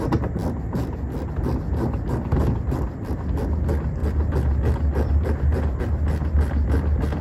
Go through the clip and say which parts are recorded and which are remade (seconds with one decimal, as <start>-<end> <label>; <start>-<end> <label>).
0.0-7.2 recorded